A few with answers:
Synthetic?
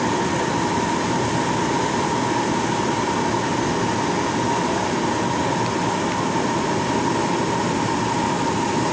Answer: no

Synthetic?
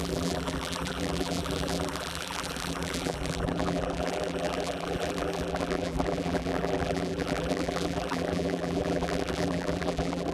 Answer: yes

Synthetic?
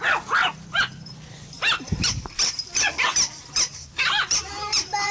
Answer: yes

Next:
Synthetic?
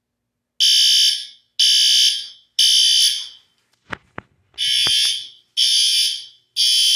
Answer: no